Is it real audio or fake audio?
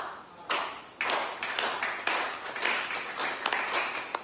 real